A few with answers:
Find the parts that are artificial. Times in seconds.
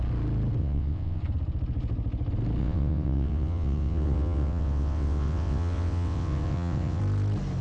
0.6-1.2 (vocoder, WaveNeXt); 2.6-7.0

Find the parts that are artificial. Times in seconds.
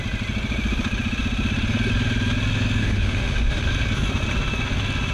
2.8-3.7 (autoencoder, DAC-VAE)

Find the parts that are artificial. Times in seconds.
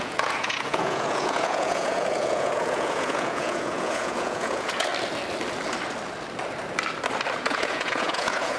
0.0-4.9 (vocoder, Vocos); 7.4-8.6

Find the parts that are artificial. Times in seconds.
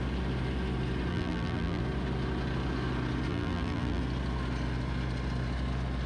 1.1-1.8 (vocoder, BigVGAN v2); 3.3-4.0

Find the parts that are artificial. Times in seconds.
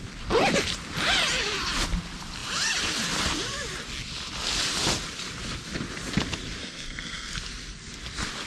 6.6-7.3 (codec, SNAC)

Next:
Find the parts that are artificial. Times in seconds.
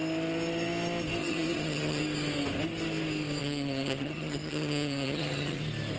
1.2-2.0 (vocoder, HiFi-GAN); 3.4-5.6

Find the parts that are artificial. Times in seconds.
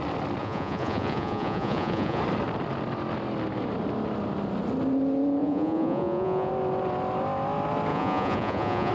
0.4-2.2 (vocoder, Vocos); 5.4-6.5; 7.9-8.9